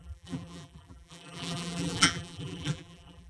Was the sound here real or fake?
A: fake